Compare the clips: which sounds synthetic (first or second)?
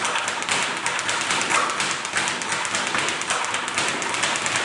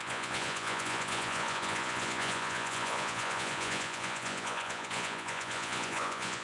second